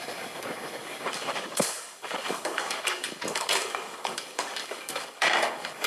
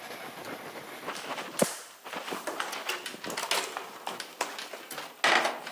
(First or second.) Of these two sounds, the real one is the second